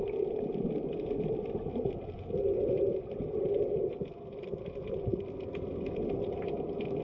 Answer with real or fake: real